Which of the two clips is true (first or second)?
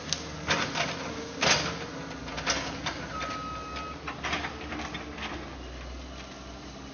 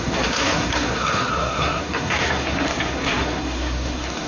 first